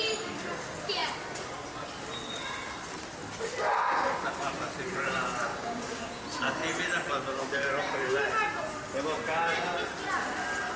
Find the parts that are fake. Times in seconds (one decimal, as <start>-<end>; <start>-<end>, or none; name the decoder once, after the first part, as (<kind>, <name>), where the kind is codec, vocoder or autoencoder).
5.5-6.2 (codec, DAC)